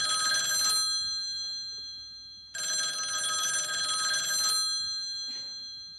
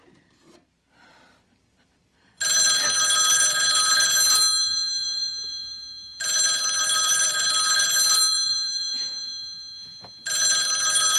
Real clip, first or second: first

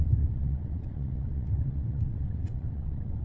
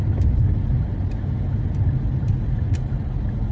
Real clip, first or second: second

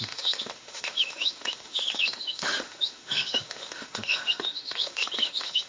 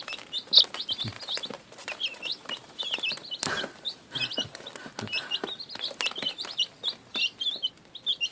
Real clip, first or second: second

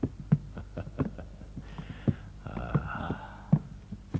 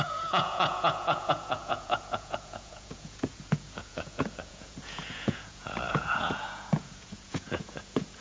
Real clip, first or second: first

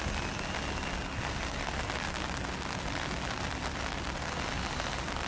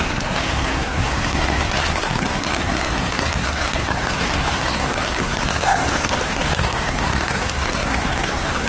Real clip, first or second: first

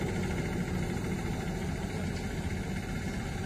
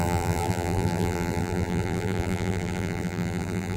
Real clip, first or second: first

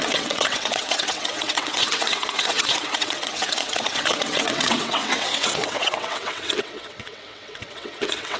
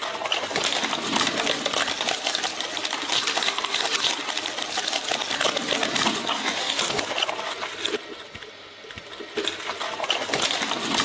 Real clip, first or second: second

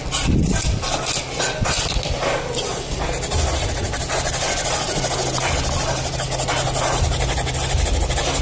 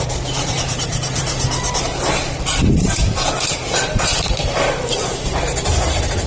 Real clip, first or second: first